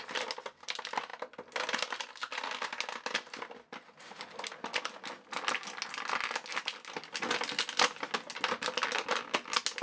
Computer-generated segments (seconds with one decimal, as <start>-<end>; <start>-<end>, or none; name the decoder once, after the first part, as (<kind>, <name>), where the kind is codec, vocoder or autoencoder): none